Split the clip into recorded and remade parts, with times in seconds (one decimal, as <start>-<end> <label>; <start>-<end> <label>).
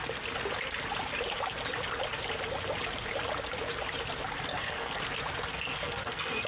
0.0-4.5 recorded; 4.5-5.0 remade; 5.0-5.5 recorded; 5.5-6.5 remade